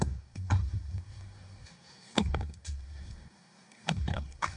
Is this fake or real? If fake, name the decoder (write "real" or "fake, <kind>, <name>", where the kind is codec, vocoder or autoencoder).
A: fake, codec, SNAC